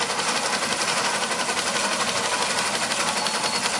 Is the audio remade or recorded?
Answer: recorded